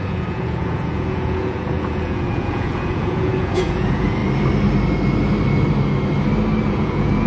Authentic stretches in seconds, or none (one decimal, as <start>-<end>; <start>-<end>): 4.2-6.7